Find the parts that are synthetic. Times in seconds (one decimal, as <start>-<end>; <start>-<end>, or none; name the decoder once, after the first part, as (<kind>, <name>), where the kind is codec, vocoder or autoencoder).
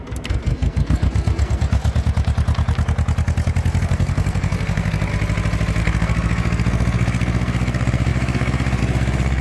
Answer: 0.0-1.8 (codec, SNAC); 3.8-5.1; 5.8-9.4